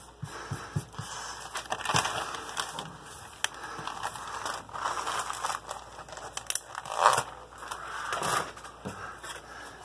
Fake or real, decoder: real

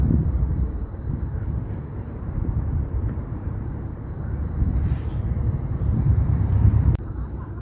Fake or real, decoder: fake, vocoder, BigVGAN v2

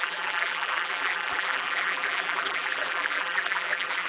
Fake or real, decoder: fake, vocoder, BigVGAN v2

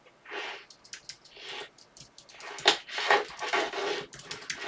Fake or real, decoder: real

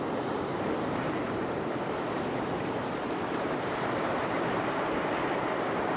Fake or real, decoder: fake, vocoder, BigVGAN v2